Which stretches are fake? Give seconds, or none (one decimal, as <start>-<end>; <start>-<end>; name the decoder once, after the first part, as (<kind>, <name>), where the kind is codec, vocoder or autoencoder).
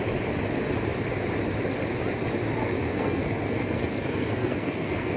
2.6-5.2 (codec, SNAC)